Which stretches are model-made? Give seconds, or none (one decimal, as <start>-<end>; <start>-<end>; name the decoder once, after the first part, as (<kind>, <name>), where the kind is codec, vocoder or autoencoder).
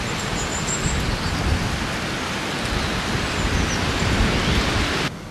none